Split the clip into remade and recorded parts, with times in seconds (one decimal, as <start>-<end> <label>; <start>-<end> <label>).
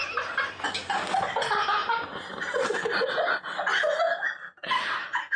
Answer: 0.0-1.8 recorded; 1.8-3.1 remade; 3.1-5.4 recorded